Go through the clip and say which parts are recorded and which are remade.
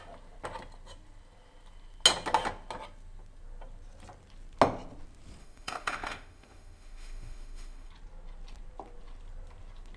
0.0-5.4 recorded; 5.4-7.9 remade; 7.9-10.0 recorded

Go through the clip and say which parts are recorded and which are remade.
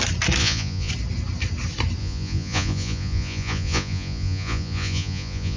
0.0-0.4 recorded; 0.4-0.9 remade; 0.9-2.0 recorded; 2.0-5.6 remade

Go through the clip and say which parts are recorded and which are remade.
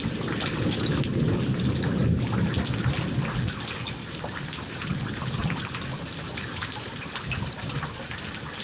0.0-4.0 recorded; 4.0-8.2 remade; 8.2-8.6 recorded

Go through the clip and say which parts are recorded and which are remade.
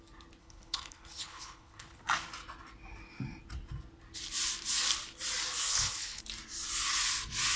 0.0-0.4 recorded; 0.4-2.0 remade; 2.0-5.6 recorded; 5.6-6.2 remade; 6.2-7.6 recorded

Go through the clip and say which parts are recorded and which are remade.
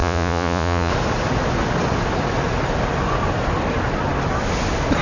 0.0-0.9 remade; 0.9-5.0 recorded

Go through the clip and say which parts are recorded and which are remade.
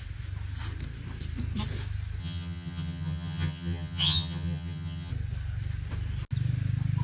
0.0-2.2 recorded; 2.2-5.1 remade; 5.1-7.0 recorded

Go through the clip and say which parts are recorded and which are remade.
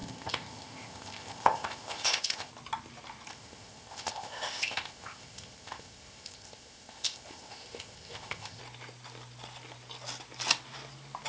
0.0-2.5 remade; 2.5-3.3 recorded; 3.3-8.6 remade; 8.6-11.3 recorded